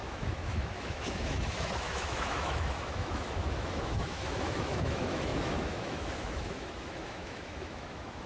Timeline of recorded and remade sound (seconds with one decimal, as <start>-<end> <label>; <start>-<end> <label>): 0.0-8.3 remade